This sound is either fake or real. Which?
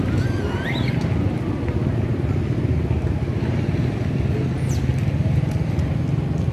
real